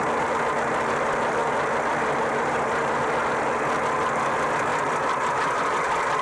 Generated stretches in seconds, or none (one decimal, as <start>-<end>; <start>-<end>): 1.4-3.0; 4.7-5.6